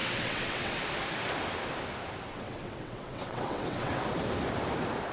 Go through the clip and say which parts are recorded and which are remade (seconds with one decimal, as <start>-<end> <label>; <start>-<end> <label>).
0.0-0.8 remade; 0.8-2.3 recorded; 2.3-3.9 remade; 3.9-5.1 recorded